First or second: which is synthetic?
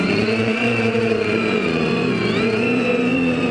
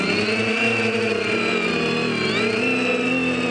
first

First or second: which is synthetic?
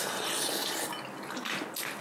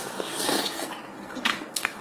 second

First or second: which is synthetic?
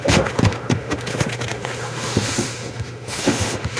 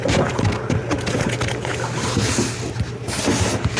first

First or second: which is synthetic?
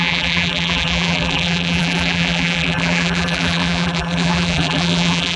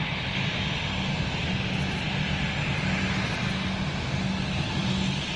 first